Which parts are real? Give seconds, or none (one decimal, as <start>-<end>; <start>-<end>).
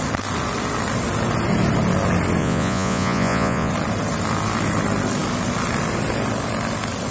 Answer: 0.0-2.4; 3.7-7.1